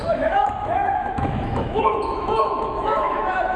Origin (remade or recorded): remade